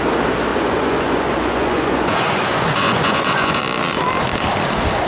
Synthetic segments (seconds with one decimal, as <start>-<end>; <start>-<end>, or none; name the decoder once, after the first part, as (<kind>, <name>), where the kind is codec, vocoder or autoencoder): 0.5-3.6 (vocoder, Vocos)